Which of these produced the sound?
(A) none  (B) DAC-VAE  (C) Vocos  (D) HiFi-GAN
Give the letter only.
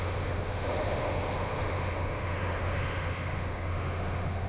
B